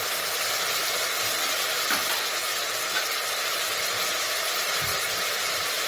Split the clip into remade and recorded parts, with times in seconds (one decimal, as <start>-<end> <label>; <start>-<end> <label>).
0.0-4.9 recorded; 4.9-5.9 remade